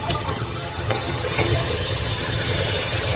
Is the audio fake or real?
fake